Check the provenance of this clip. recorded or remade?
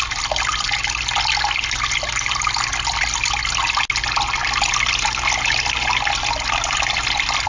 recorded